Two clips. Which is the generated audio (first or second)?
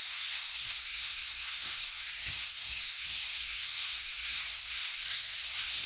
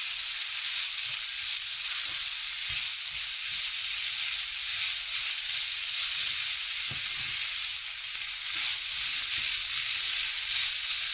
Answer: first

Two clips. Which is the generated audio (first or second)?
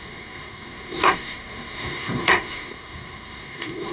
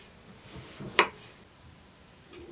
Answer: first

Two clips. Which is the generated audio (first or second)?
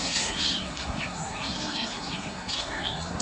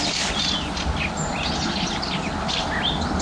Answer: first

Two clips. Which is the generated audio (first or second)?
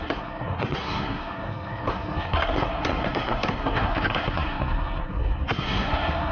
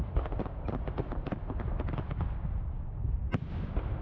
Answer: first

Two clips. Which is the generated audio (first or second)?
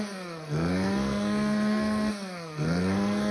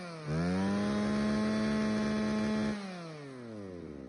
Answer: first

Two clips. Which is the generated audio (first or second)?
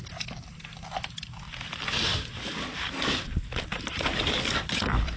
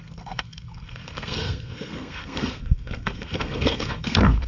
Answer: second